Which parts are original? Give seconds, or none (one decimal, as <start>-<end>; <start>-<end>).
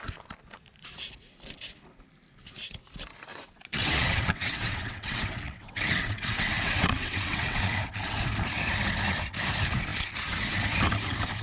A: 0.0-3.3; 8.2-11.4